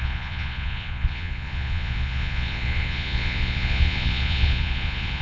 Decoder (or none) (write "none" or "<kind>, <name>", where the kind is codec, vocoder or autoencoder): vocoder, Vocos